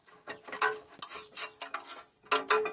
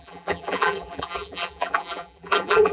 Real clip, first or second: first